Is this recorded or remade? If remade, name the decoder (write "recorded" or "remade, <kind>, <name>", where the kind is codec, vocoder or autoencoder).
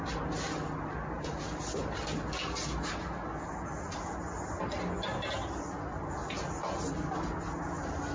recorded